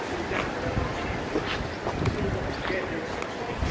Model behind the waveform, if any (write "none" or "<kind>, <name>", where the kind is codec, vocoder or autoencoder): none